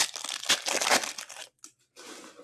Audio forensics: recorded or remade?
recorded